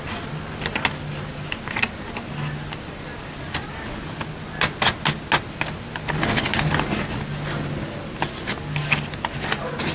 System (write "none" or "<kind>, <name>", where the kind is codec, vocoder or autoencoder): none